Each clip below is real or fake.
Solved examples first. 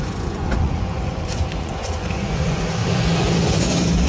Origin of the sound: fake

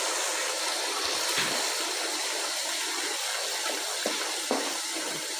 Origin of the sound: real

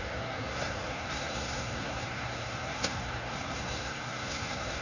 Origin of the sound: fake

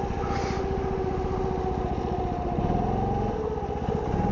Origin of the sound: real